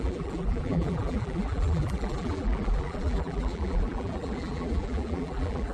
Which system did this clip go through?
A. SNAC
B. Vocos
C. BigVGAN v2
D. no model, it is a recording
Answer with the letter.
C